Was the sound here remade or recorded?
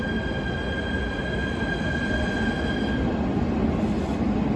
recorded